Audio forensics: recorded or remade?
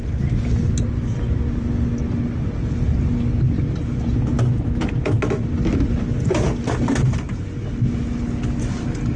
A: recorded